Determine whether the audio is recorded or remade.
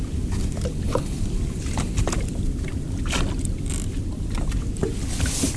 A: recorded